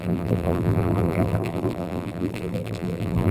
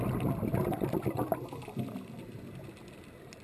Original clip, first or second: second